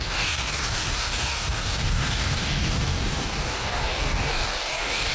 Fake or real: fake